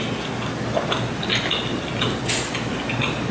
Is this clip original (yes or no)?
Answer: yes